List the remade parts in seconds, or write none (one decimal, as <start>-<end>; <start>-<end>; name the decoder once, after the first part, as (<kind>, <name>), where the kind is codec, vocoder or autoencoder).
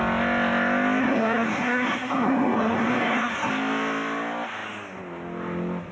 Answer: 1.0-3.5 (codec, SNAC)